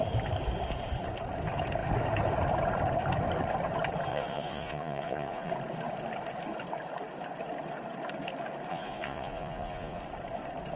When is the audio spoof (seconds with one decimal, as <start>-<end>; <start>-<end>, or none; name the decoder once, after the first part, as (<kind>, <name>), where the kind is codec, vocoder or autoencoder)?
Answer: 4.1-5.5 (vocoder, Vocos); 8.7-10.0